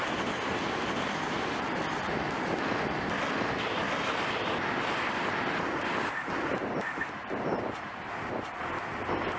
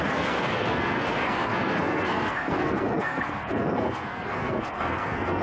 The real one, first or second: first